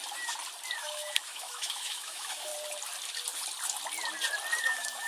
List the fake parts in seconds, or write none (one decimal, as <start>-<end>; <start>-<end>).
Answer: 0.8-2.5; 4.6-5.1